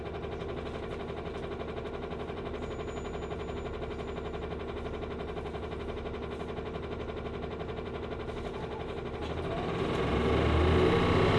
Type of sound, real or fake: real